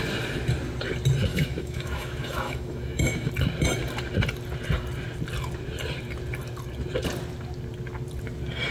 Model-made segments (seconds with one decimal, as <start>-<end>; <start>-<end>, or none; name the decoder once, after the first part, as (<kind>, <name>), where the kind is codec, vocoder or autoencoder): 1.3-3.3 (autoencoder, DAC-VAE)